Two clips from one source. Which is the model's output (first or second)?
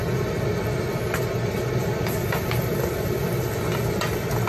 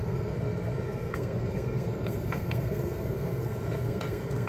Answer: second